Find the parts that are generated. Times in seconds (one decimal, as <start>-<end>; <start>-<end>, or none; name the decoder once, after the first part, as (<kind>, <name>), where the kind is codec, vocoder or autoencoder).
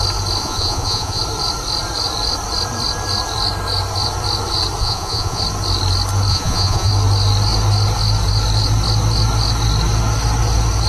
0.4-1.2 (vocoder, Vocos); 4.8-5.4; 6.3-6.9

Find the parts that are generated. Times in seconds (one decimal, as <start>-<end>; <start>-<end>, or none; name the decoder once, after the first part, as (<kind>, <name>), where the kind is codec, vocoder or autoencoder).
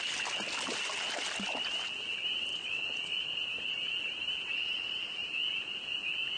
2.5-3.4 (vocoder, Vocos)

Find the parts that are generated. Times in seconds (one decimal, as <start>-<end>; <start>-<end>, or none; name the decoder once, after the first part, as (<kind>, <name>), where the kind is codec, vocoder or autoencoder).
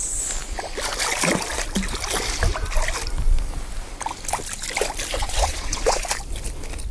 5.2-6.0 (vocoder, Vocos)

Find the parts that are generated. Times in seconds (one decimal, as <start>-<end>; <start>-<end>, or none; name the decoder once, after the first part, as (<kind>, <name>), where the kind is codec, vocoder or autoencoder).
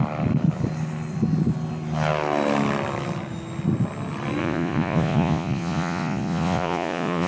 4.4-7.3 (vocoder, Vocos)